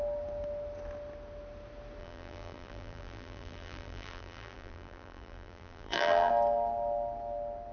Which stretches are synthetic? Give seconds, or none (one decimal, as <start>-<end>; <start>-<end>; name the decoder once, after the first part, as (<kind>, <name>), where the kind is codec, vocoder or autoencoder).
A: 2.0-6.3 (vocoder, BigVGAN v2)